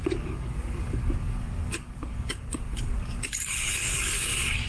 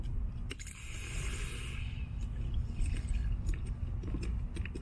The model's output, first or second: first